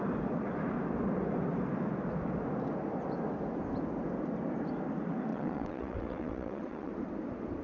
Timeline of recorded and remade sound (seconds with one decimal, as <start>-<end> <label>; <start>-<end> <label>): 0.0-5.3 recorded; 5.3-6.9 remade; 6.9-7.6 recorded